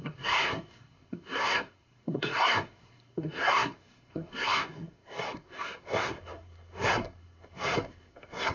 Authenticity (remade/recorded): remade